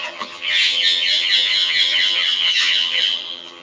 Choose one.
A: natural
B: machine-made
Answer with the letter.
B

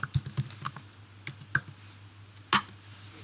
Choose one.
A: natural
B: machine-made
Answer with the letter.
A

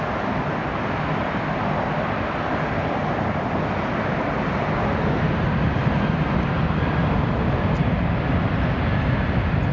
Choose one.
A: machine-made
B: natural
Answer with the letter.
B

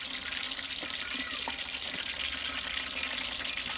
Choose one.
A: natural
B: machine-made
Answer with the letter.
A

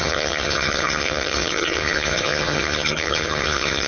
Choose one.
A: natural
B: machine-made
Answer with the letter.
B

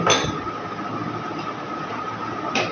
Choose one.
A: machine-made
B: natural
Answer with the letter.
B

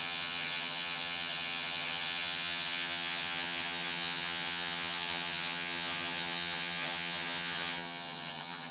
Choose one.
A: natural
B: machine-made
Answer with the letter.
B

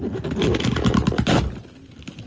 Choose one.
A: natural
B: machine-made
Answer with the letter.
A